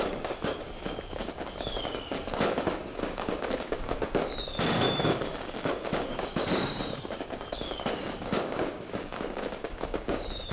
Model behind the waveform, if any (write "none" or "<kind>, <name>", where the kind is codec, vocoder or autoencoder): codec, DAC